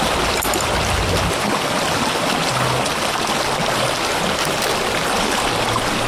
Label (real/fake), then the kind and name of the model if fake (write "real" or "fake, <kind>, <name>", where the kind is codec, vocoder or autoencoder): real